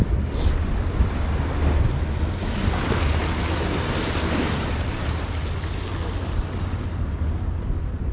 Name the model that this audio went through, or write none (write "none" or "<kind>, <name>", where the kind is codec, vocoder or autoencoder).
none